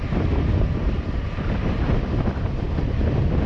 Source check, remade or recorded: remade